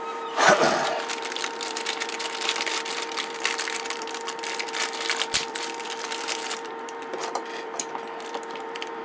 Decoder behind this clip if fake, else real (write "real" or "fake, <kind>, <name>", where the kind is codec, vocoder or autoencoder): fake, vocoder, BigVGAN v2